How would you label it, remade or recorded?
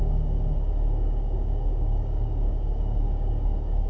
remade